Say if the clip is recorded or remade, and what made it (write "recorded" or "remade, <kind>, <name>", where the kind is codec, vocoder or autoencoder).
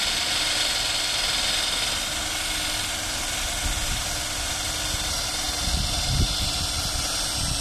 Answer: recorded